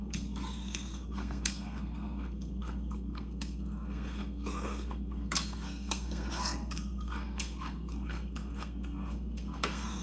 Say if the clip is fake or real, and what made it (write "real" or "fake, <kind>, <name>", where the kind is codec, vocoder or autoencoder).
fake, codec, SNAC